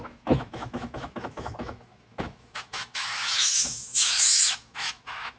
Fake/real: fake